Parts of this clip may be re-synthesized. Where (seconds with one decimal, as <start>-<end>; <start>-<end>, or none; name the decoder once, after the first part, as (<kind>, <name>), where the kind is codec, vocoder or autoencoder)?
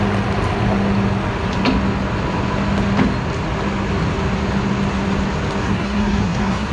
5.6-6.7 (codec, SNAC)